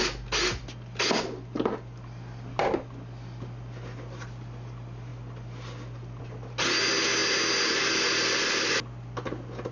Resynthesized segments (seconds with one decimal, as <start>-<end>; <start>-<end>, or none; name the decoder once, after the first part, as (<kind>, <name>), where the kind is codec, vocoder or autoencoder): none